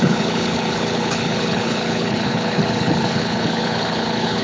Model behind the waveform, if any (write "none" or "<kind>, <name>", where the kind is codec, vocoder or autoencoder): codec, HILCodec